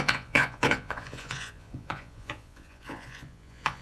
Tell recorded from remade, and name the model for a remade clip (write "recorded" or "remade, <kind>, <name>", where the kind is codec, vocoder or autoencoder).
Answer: remade, vocoder, Vocos